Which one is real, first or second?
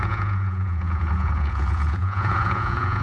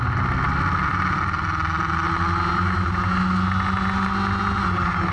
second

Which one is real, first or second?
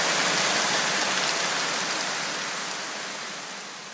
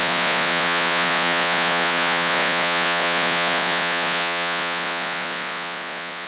first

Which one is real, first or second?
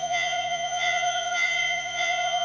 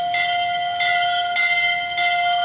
second